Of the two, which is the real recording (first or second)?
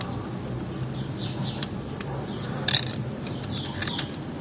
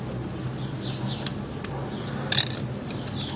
second